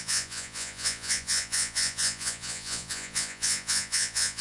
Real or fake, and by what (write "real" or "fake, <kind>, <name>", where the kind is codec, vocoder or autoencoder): fake, vocoder, Vocos